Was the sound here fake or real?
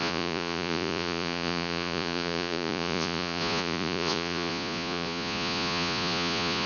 fake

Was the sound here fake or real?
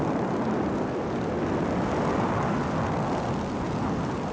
real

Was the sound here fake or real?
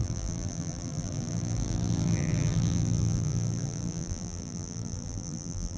fake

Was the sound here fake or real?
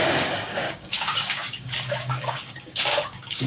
fake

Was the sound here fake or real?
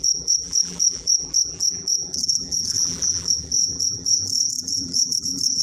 fake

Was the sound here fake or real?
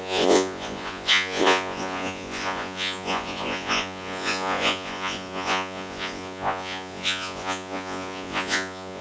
fake